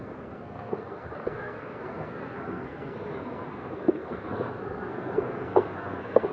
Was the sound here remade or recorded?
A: remade